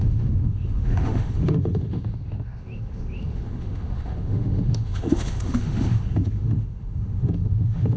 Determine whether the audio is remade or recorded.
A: remade